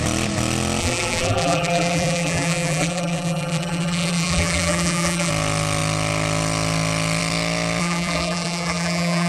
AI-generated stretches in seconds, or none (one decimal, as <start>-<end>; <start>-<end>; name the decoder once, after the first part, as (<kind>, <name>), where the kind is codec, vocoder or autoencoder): 0.8-5.3 (vocoder, BigVGAN v2); 7.8-9.3